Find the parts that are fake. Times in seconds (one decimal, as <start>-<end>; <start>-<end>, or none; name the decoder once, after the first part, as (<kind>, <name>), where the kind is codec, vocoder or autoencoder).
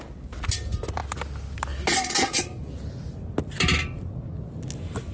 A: none